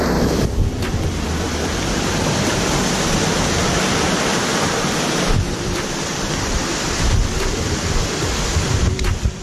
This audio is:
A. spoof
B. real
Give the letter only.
A